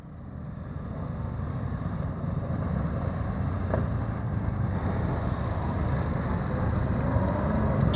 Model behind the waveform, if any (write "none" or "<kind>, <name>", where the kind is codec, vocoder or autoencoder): none